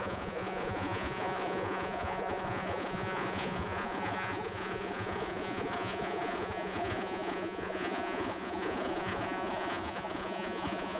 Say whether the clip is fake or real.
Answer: fake